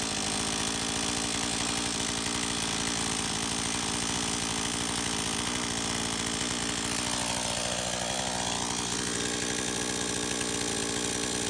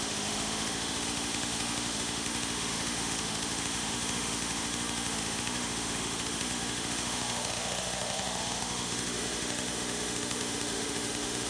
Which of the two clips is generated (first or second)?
second